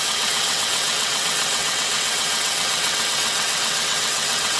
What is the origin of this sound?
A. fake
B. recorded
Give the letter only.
A